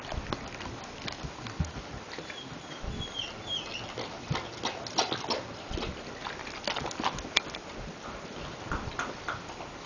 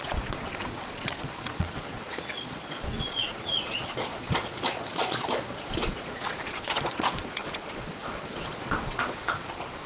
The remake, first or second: second